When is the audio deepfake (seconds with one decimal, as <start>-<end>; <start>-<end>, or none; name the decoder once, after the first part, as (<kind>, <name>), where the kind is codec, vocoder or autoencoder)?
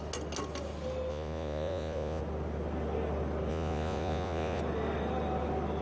1.1-2.2 (vocoder, Vocos); 3.5-4.6